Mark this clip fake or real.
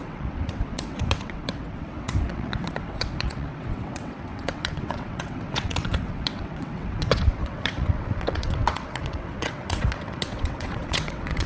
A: fake